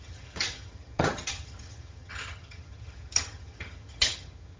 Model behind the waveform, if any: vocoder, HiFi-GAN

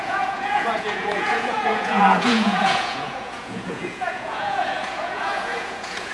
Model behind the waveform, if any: vocoder, Vocos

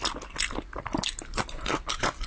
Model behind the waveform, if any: none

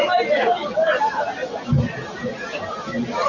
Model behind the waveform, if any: none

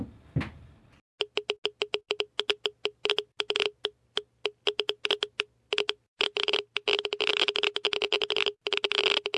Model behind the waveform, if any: none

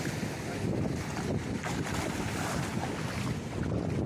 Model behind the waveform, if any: none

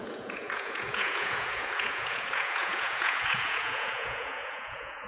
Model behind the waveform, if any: vocoder, Vocos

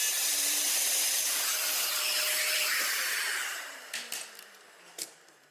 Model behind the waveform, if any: vocoder, BigVGAN v2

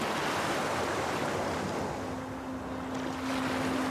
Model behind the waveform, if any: none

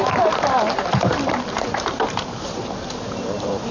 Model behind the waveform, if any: vocoder, BigVGAN v2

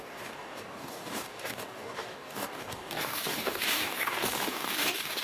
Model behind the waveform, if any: codec, DAC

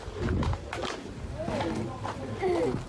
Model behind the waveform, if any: none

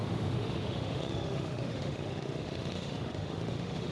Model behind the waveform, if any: autoencoder, DAC-VAE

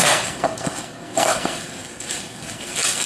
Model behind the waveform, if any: codec, SNAC